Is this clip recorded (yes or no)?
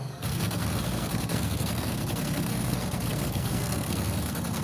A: no